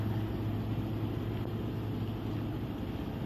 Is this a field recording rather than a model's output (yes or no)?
yes